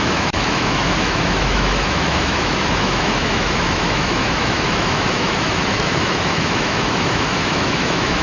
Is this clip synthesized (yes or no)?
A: yes